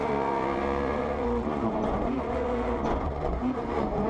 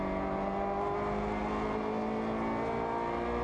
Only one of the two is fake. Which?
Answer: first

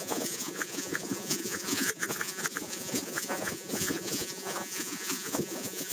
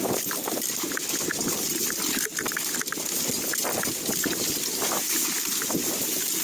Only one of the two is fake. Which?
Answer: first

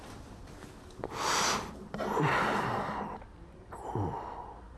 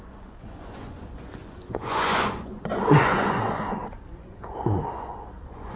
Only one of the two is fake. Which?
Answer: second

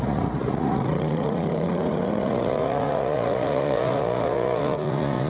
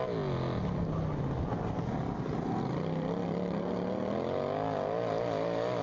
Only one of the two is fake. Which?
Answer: first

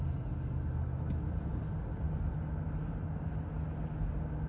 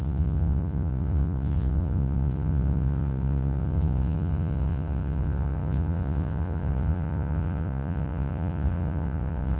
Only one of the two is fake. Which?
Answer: second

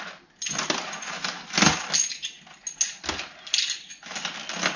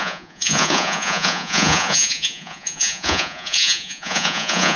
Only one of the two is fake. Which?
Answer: second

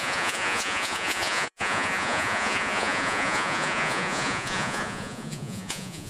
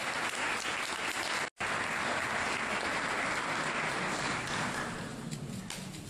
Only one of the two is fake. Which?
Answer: first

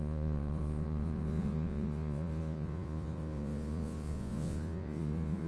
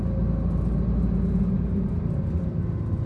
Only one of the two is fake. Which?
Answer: first